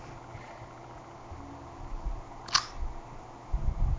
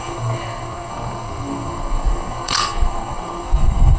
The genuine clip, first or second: first